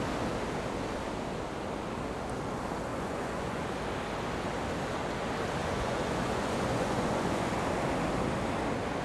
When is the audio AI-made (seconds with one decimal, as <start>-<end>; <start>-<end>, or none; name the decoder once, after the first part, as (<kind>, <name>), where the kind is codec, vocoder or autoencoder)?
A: 2.9-3.7 (vocoder, Vocos); 5.6-7.6